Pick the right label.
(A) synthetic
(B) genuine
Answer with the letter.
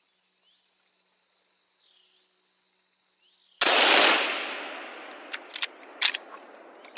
B